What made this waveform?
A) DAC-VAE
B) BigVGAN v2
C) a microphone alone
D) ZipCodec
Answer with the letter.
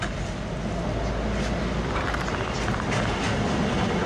C